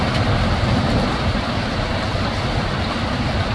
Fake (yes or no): no